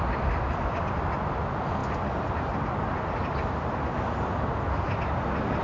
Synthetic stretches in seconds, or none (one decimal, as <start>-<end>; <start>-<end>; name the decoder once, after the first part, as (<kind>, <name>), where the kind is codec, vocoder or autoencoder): none